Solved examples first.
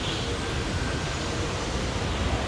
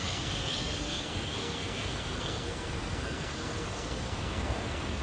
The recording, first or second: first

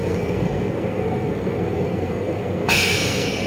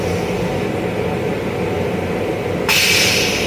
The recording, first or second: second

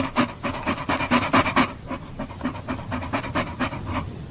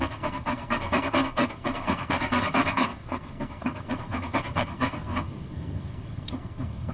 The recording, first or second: first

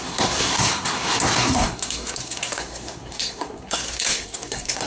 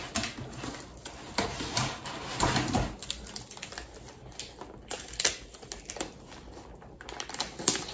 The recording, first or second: second